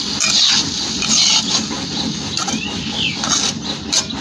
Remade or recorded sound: recorded